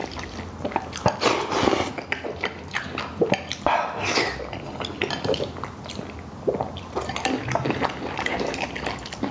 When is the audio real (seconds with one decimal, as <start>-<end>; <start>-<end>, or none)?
0.0-9.3